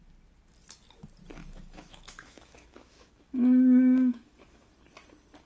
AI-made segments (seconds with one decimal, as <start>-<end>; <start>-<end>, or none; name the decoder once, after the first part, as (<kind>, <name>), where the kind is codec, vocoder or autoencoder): 1.4-4.7 (autoencoder, DAC-VAE)